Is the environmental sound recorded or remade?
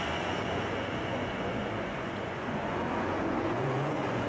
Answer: remade